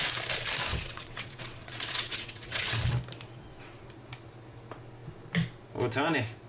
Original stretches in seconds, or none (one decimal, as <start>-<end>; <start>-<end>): 0.0-0.7; 2.8-6.5

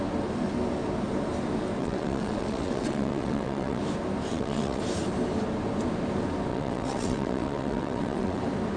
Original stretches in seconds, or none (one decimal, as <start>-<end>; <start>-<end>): 0.0-1.8; 3.8-4.3; 4.8-6.5; 8.4-8.8

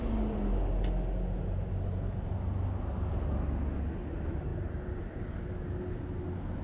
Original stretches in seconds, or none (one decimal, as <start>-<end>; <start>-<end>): 0.0-6.6

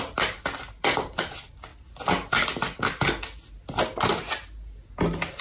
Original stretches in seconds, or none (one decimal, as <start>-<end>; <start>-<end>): 0.0-5.4

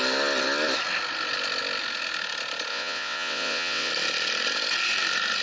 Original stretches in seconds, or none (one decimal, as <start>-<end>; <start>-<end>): 0.0-2.7; 3.9-5.4

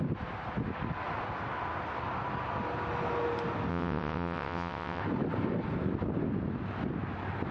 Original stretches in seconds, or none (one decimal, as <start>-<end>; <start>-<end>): 0.0-3.7; 5.0-7.5

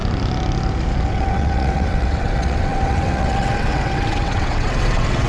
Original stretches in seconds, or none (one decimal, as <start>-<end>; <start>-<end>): 0.0-1.1